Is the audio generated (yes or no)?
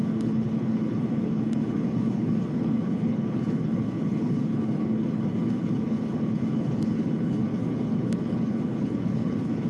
yes